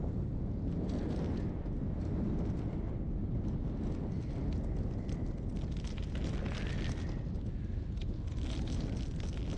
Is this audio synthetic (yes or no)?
no